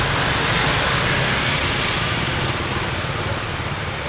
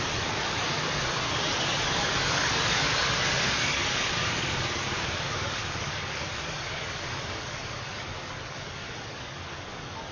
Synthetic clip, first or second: second